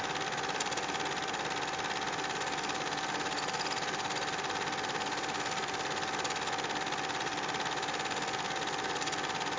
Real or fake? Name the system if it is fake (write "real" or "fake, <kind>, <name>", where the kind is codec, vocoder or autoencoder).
real